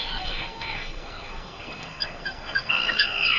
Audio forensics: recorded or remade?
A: remade